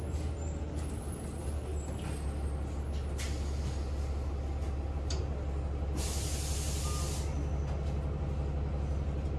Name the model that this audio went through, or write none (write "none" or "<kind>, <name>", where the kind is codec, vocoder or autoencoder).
none